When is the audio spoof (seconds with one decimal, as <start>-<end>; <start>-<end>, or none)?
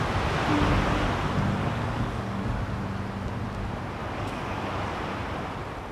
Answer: 1.6-2.6; 4.0-5.0